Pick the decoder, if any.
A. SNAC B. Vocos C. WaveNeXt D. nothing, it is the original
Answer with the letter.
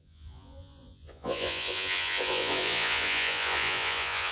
B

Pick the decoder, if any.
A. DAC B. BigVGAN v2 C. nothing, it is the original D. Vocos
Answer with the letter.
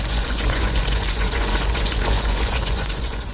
D